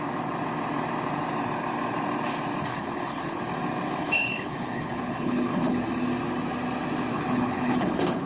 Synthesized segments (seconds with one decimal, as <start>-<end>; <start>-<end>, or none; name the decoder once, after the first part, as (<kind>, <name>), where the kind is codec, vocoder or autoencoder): 2.7-3.4 (codec, HILCodec); 4.0-5.8; 7.1-8.3